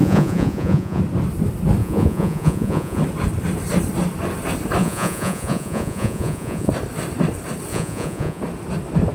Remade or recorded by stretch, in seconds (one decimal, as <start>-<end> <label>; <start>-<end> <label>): 0.0-1.0 remade; 1.0-1.8 recorded; 1.8-3.0 remade; 3.0-4.8 recorded; 4.8-6.7 remade; 6.7-7.7 recorded; 7.7-8.4 remade; 8.4-9.1 recorded